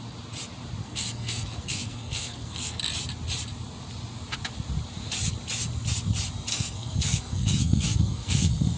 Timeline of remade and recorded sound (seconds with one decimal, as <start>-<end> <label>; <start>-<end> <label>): 0.0-0.8 recorded; 0.8-2.8 remade; 2.8-6.5 recorded; 6.5-8.8 remade